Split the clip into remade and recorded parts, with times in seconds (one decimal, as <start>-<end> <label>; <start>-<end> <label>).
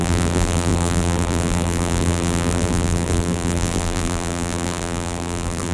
0.0-5.7 remade